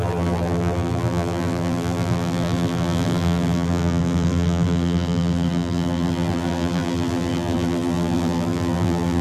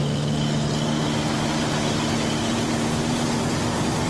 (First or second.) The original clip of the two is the second